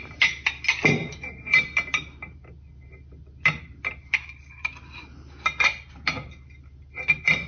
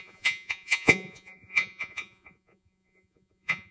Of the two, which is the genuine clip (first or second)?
first